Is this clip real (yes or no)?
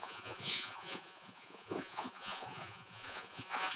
no